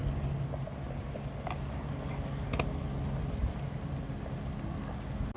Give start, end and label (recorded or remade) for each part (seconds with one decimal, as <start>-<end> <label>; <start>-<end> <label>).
0.0-5.4 recorded